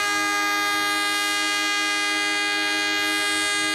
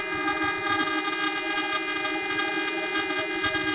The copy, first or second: second